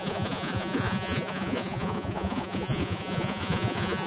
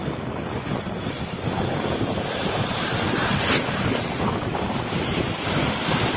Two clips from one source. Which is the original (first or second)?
second